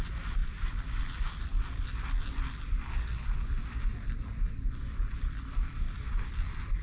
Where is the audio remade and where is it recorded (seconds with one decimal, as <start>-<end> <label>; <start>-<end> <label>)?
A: 0.0-6.8 recorded